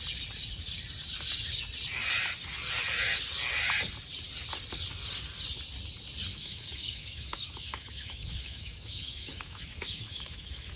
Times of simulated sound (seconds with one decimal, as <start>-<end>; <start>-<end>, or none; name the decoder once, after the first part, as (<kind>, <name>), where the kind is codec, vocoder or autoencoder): 6.3-10.8 (autoencoder, DAC-VAE)